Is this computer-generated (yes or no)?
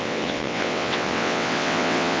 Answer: yes